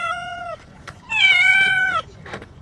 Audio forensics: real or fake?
fake